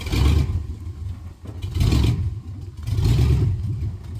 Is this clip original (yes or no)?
yes